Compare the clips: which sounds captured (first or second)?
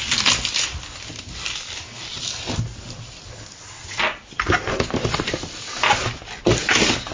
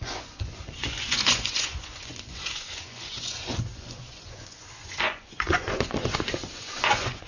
first